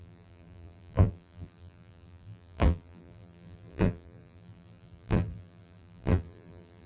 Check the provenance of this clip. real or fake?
fake